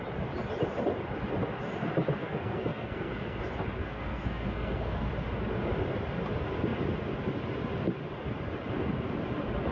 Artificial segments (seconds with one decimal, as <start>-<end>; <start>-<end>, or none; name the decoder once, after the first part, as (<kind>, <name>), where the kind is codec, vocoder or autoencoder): 2.2-3.4 (codec, SNAC); 3.8-5.1

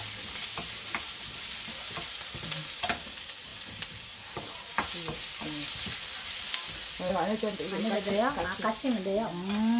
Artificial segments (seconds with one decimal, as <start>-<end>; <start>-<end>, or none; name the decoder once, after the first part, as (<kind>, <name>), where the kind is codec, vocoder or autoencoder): none

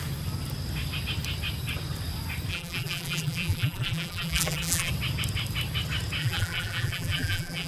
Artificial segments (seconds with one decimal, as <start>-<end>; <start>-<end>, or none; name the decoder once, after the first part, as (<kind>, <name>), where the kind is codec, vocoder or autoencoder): 2.5-4.9 (vocoder, BigVGAN v2); 6.2-7.7

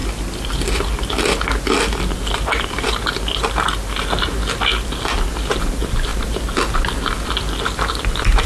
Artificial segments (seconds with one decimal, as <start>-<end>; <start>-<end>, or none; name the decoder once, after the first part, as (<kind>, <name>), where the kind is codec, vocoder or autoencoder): none

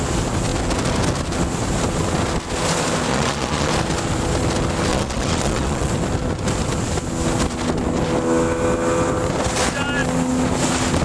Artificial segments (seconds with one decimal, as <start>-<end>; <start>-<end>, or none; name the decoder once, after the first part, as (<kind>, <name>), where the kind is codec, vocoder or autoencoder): 3.1-3.7 (vocoder, Vocos); 4.9-5.9

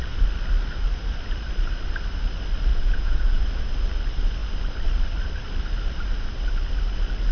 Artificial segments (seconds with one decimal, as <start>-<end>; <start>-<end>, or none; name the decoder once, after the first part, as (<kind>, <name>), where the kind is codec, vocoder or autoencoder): 2.7-3.4 (vocoder, Vocos)

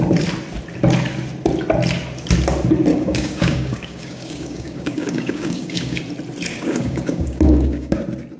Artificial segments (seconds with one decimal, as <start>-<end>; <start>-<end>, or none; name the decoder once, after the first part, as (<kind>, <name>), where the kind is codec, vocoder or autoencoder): 2.9-6.0 (codec, DAC); 6.5-8.0

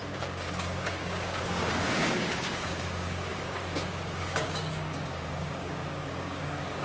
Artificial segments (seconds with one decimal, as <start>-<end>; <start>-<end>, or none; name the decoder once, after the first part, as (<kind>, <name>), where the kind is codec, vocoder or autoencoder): 0.0-6.8 (codec, DAC)